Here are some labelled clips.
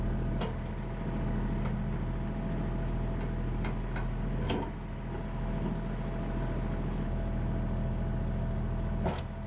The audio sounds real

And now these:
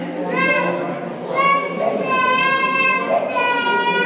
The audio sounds real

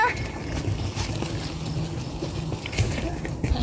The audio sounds real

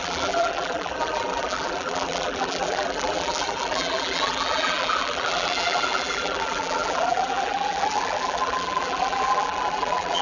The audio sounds fake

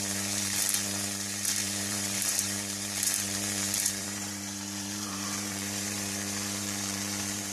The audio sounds fake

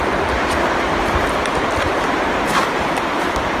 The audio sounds real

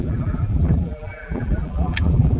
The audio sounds fake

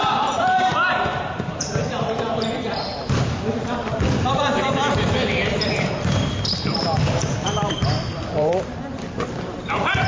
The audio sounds fake